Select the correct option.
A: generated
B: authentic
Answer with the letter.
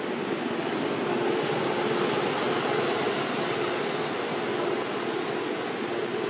B